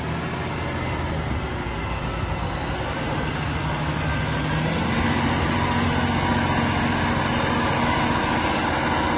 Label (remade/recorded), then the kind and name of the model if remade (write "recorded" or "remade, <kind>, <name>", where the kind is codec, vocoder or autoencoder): recorded